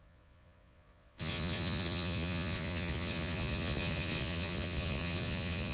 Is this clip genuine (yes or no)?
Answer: no